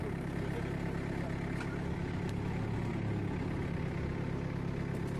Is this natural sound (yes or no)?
yes